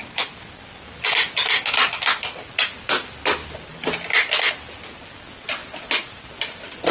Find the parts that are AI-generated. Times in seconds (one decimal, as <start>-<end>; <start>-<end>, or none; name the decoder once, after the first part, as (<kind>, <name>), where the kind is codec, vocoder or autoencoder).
none